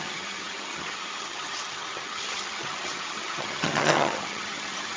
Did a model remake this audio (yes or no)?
yes